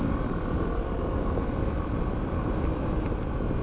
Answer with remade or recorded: recorded